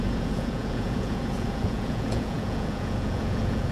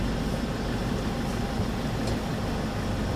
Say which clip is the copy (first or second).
first